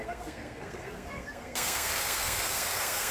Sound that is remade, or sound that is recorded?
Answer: remade